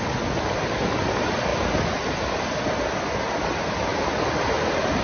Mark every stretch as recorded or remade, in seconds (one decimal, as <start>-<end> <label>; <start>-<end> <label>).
0.0-5.0 recorded